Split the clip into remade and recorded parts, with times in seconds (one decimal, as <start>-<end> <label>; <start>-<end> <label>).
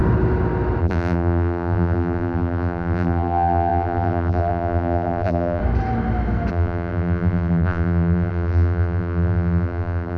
0.0-0.8 recorded; 0.8-5.6 remade; 5.6-6.5 recorded; 6.5-10.2 remade